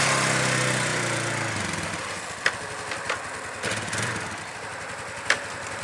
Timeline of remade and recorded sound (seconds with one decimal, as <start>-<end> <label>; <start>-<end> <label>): 0.0-5.8 recorded

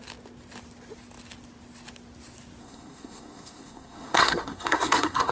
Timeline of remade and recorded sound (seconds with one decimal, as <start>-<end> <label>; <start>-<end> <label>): 0.0-2.6 recorded; 2.6-5.3 remade

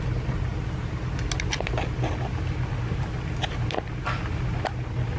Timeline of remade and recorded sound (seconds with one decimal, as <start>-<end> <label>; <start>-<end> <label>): 0.0-0.5 recorded; 0.5-1.2 remade; 1.2-5.2 recorded

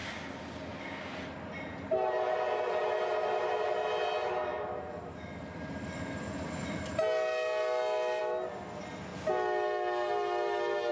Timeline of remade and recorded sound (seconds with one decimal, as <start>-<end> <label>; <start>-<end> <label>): 0.0-10.9 recorded

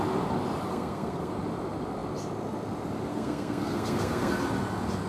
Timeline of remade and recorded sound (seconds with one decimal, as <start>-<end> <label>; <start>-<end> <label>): 0.0-0.7 recorded; 0.7-1.3 remade; 1.3-3.1 recorded; 3.1-4.3 remade; 4.3-5.1 recorded